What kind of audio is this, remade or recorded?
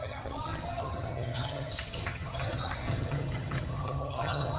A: remade